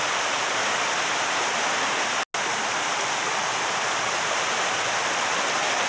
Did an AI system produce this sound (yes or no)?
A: no